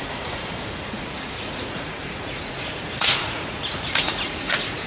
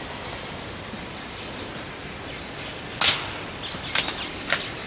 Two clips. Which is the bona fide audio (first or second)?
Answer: second